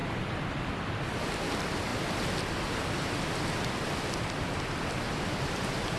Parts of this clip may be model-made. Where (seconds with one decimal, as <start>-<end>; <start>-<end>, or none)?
0.0-1.9; 3.3-6.0